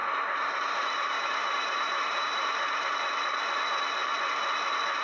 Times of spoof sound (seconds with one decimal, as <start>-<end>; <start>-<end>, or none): 0.0-3.0